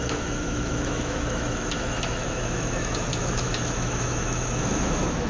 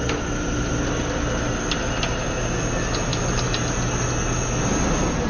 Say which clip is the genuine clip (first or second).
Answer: second